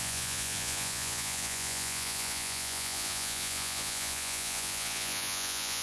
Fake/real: fake